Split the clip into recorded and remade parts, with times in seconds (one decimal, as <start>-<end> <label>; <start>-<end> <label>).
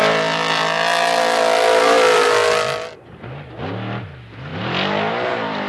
0.0-5.7 recorded